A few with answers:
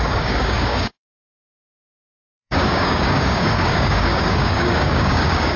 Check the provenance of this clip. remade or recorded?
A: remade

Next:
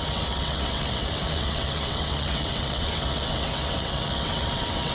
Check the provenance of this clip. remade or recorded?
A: remade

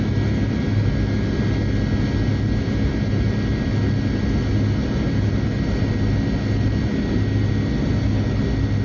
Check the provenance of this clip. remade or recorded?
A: recorded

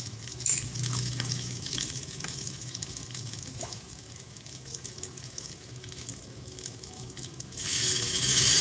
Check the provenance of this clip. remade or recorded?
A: remade